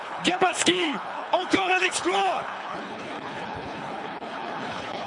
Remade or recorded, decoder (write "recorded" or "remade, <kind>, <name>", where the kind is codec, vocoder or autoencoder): remade, codec, HILCodec